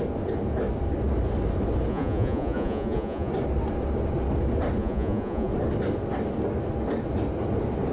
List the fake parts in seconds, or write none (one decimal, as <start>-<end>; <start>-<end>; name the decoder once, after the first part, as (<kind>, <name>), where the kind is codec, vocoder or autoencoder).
1.9-3.3 (vocoder, Vocos); 4.8-5.5